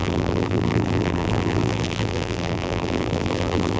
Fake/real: fake